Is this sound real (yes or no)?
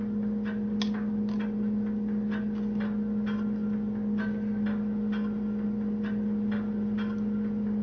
yes